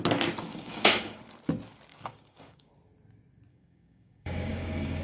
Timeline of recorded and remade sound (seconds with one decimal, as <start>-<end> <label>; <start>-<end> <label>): 0.0-0.5 recorded; 0.5-1.2 remade; 1.2-1.9 recorded; 1.9-2.7 remade; 2.7-3.5 recorded; 3.5-5.0 remade